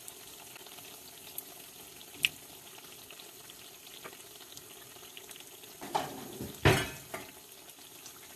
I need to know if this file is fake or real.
real